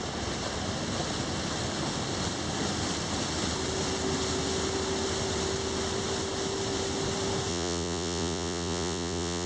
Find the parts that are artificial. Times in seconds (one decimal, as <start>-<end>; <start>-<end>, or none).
7.5-9.5